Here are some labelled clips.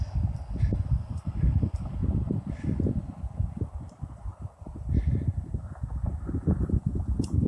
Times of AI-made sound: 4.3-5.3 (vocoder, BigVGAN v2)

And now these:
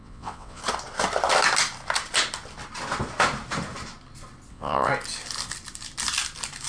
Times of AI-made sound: 0.0-0.6 (vocoder, WaveNeXt); 4.5-4.9